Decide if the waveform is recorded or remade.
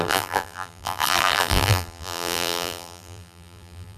remade